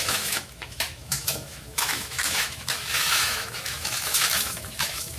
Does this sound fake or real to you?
fake